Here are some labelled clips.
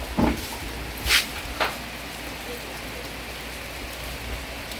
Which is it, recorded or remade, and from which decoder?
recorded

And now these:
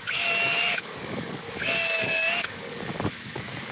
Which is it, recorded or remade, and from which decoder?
remade, codec, DAC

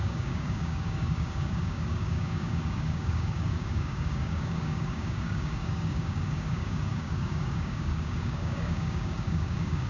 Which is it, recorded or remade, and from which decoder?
remade, codec, DAC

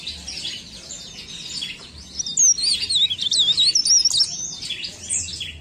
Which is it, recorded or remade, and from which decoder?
recorded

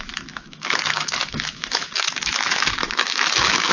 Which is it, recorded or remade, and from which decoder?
remade, autoencoder, DAC-VAE